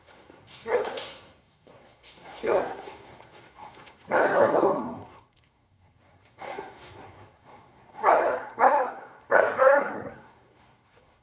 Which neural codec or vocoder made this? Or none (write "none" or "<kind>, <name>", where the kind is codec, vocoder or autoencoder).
codec, SNAC